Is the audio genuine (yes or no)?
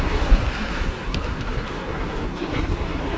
no